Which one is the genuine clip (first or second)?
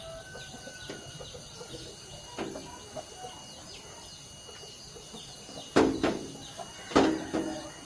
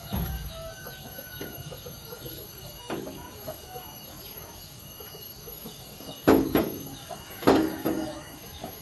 first